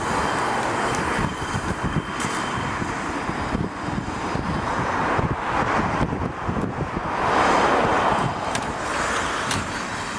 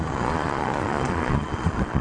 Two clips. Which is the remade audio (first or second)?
second